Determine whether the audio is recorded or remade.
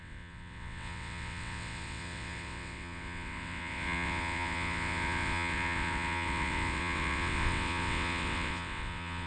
remade